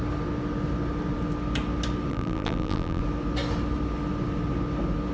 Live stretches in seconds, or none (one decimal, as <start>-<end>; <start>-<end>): 0.0-2.1; 3.0-5.1